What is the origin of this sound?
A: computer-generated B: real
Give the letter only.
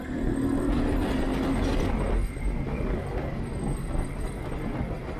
B